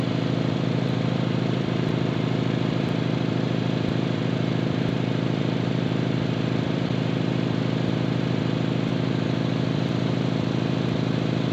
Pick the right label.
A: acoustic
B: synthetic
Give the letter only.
B